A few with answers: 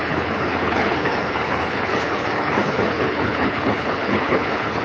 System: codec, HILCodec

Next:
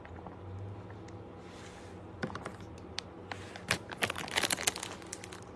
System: none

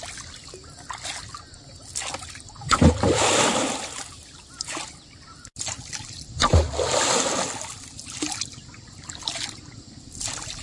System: none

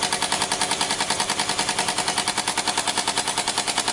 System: none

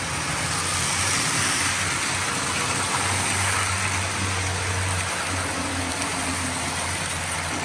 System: none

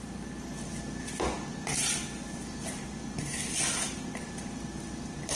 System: none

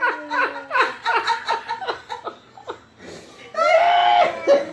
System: none